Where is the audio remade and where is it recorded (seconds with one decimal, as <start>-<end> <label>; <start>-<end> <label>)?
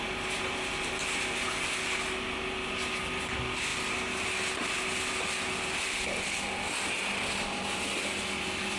0.0-8.8 recorded